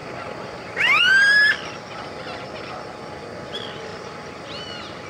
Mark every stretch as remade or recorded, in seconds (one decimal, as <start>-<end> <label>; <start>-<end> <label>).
0.0-1.4 remade; 1.4-3.9 recorded; 3.9-4.6 remade; 4.6-5.1 recorded